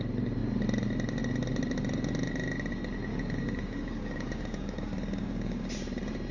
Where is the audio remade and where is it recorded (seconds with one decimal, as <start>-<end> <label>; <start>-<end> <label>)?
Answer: 0.0-3.1 recorded; 3.1-5.7 remade; 5.7-6.3 recorded